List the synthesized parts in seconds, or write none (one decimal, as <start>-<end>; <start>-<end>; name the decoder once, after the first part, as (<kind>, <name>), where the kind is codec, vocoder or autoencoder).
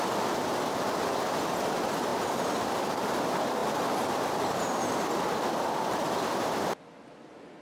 none